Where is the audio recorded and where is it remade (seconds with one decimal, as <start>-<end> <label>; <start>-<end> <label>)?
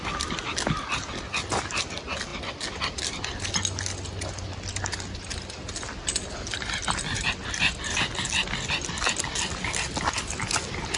0.0-11.0 recorded